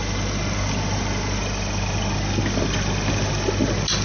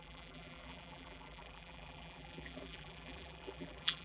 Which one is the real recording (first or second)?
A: first